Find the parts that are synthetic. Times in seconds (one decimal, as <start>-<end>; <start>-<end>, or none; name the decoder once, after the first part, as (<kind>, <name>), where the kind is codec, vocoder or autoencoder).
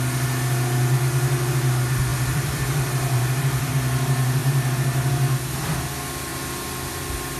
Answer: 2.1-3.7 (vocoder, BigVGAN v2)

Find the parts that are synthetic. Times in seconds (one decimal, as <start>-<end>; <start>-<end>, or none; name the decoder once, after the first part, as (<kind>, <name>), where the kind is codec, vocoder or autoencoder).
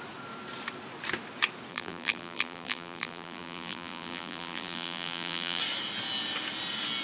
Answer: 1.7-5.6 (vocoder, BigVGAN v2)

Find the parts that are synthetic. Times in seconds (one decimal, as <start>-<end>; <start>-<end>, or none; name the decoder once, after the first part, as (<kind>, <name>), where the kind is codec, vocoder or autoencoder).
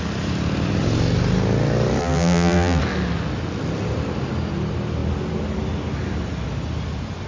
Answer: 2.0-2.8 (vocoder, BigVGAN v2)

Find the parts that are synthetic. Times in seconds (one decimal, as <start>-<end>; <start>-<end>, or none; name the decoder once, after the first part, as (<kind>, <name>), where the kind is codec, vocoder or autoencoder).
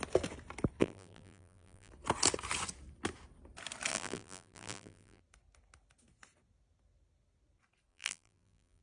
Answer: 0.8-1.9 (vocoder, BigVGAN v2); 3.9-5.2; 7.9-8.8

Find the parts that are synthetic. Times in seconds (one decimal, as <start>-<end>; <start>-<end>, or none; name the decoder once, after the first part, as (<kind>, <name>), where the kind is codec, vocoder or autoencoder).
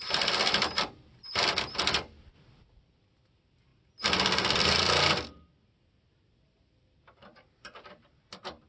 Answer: 0.0-3.7 (vocoder, BigVGAN v2); 4.6-8.7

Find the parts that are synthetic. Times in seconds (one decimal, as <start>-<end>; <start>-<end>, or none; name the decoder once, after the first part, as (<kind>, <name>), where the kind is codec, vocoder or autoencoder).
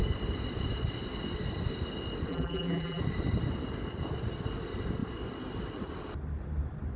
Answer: 2.3-3.0 (vocoder, BigVGAN v2)